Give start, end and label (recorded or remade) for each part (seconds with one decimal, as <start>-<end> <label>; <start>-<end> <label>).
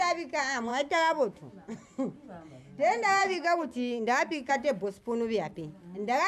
0.0-0.7 recorded; 0.7-1.5 remade; 1.5-3.2 recorded; 3.2-4.5 remade; 4.5-6.3 recorded